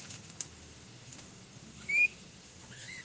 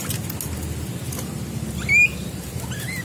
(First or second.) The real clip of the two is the second